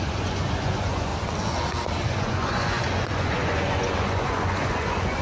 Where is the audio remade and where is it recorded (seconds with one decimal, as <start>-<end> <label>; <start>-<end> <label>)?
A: 0.0-1.1 remade; 1.1-2.2 recorded; 2.2-5.2 remade